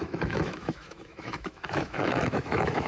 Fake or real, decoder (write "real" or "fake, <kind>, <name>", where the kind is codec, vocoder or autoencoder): fake, autoencoder, DAC-VAE